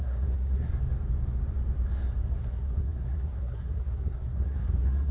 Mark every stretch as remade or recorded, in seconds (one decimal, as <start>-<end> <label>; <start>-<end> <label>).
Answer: 0.0-0.7 remade; 0.7-2.4 recorded; 2.4-5.1 remade